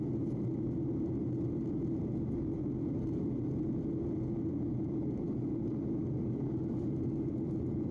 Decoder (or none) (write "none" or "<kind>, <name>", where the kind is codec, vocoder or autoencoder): none